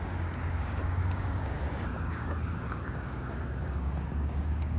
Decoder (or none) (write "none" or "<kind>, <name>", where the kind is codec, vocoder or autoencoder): codec, DAC